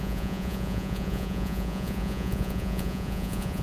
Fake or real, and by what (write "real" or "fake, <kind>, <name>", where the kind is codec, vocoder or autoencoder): fake, vocoder, Vocos